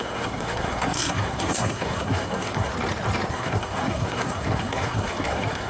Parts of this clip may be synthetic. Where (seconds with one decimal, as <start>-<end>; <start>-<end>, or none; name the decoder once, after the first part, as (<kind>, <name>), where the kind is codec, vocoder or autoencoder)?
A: 0.0-2.7 (codec, SNAC); 3.3-5.7